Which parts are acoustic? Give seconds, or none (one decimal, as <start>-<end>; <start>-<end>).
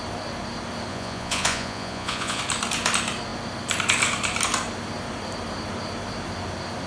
0.0-0.9; 2.4-6.9